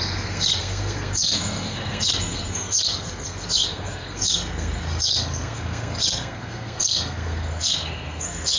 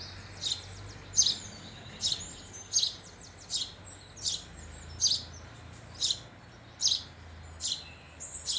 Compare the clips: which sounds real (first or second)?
second